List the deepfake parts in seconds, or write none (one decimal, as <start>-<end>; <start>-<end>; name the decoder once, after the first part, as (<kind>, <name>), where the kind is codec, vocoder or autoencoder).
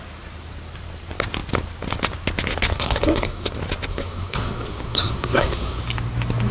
2.7-3.5 (codec, SNAC); 3.9-5.8